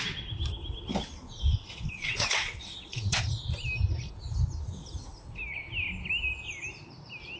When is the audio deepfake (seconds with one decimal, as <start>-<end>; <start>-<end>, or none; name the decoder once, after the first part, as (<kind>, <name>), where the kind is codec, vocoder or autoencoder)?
1.5-3.2 (vocoder, WaveNeXt)